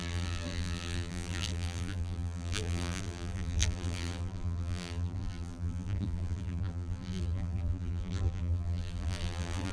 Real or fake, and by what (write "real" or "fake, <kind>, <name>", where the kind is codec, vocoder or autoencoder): fake, vocoder, BigVGAN v2